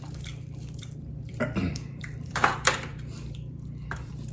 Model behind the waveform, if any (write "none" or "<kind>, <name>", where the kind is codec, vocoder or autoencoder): vocoder, BigVGAN v2